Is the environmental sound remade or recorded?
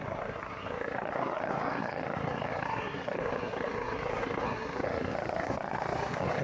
remade